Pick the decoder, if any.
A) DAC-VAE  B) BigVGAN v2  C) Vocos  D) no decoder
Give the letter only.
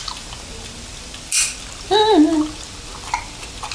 D